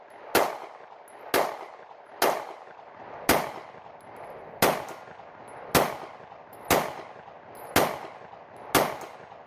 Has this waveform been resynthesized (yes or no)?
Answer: no